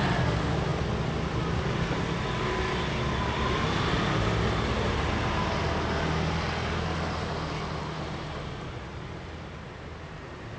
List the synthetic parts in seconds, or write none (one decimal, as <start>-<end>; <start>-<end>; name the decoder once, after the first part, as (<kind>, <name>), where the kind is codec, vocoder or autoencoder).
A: none

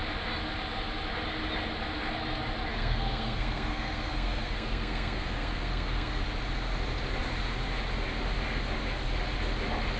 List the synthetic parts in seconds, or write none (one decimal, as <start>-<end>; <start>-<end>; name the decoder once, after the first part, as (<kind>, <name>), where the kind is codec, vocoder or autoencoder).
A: 2.7-6.2 (codec, SNAC)

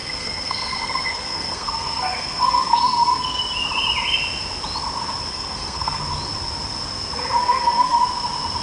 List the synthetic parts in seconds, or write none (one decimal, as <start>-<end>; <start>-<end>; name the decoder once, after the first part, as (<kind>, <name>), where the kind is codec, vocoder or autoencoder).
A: 0.0-3.4 (codec, SNAC); 5.3-6.0; 7.4-8.0

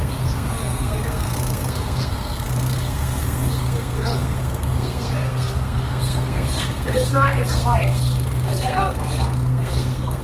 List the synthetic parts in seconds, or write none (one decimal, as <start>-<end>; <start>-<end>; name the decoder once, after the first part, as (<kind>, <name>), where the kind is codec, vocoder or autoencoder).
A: 0.0-10.2 (codec, SNAC)